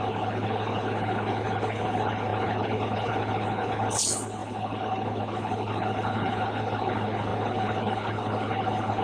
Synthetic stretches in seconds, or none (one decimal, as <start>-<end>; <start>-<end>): 0.0-9.0

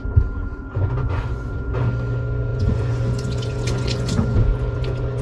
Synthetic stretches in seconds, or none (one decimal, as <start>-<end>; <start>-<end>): 0.4-1.5; 2.5-5.2

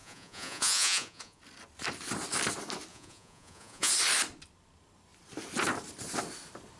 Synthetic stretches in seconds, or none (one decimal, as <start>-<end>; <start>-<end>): 0.0-1.4; 2.9-3.9